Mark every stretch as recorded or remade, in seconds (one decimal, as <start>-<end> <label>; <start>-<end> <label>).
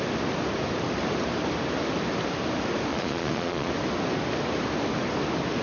0.0-2.9 recorded; 2.9-3.7 remade; 3.7-5.6 recorded